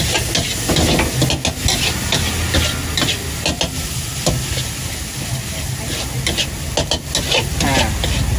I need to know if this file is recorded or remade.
recorded